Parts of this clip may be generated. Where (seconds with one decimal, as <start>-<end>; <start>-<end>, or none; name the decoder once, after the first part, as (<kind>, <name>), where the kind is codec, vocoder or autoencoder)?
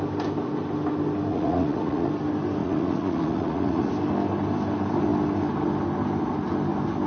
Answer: 1.3-2.1 (vocoder, Vocos); 2.6-3.9